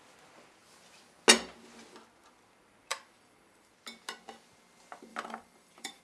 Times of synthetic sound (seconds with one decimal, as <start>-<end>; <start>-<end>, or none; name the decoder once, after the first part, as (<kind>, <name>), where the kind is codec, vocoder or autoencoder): 2.9-3.7 (vocoder, BigVGAN v2); 5.1-6.0